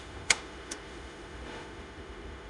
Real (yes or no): no